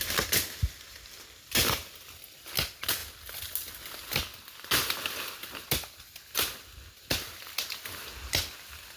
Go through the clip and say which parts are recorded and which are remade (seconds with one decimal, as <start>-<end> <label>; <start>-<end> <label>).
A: 0.0-9.0 recorded